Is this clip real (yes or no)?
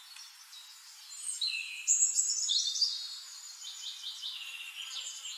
yes